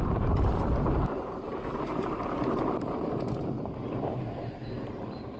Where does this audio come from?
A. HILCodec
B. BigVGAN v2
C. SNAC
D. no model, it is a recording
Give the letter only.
B